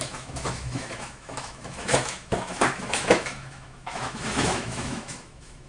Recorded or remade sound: remade